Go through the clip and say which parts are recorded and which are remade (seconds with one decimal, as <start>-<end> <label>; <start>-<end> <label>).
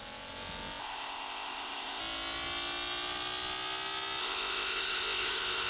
0.0-0.8 recorded; 0.8-2.0 remade; 2.0-4.2 recorded; 4.2-5.7 remade